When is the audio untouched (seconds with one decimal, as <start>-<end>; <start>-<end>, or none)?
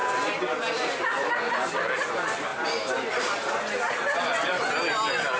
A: 0.0-5.4